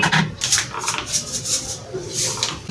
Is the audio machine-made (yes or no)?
no